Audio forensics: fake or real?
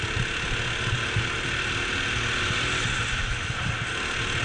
real